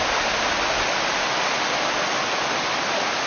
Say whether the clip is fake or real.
real